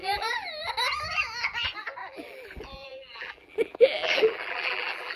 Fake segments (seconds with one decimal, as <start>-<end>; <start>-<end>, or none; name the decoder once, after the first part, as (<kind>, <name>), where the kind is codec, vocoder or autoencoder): 0.0-0.7 (vocoder, BigVGAN v2); 2.0-5.2